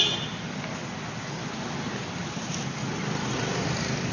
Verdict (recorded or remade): remade